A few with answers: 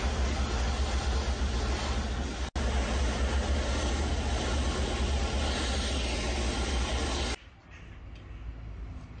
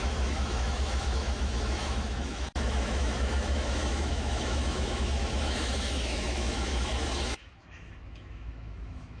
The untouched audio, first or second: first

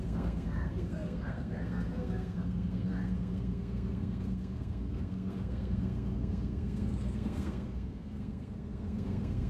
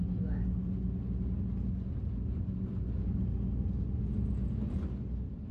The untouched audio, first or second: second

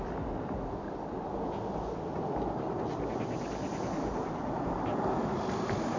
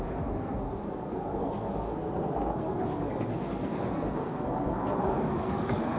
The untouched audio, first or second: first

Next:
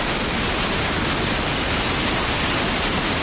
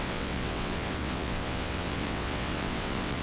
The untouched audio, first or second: first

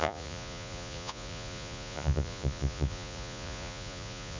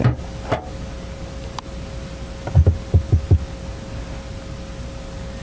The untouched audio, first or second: second